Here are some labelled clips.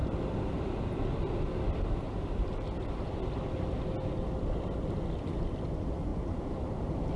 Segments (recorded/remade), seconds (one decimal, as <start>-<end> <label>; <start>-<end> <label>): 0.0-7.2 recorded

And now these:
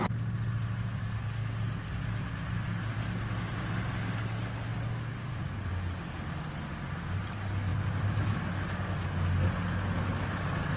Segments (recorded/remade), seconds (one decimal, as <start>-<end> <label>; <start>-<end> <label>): 0.0-10.8 recorded

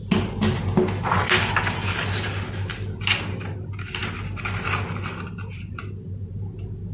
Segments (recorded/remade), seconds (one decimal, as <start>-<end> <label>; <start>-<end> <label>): 0.0-6.9 recorded

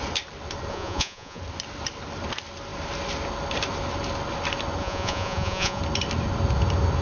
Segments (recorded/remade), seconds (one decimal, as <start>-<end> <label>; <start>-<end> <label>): 0.0-0.7 recorded; 0.7-1.4 remade; 1.4-4.8 recorded; 4.8-5.8 remade; 5.8-7.0 recorded

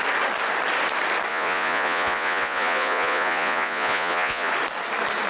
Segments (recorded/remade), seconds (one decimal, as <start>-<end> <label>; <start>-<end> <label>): 0.0-1.3 recorded; 1.3-4.5 remade; 4.5-5.3 recorded

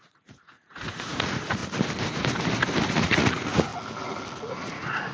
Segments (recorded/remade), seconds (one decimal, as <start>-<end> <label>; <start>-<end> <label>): 0.0-1.6 remade; 1.6-2.9 recorded; 2.9-3.7 remade; 3.7-4.5 recorded; 4.5-5.1 remade

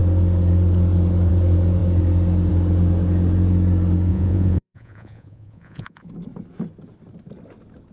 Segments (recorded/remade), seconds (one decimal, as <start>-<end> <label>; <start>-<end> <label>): 0.0-4.1 recorded; 4.1-6.1 remade; 6.1-7.9 recorded